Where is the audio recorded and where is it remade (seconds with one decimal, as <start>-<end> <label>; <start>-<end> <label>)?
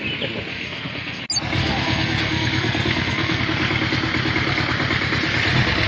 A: 0.0-0.5 recorded; 0.5-1.2 remade; 1.2-1.6 recorded; 1.6-3.4 remade; 3.4-5.9 recorded